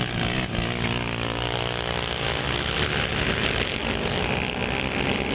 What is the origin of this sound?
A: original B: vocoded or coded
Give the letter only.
A